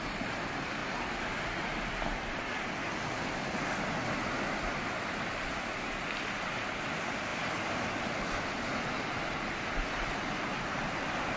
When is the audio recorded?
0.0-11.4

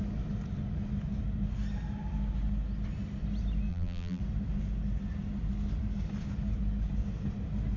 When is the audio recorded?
0.0-3.7; 4.2-7.8